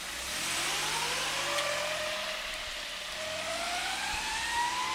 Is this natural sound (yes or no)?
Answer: yes